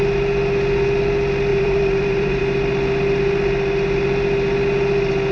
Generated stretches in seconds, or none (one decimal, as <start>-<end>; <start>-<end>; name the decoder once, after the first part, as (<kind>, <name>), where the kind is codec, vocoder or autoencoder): 1.5-2.4 (vocoder, BigVGAN v2)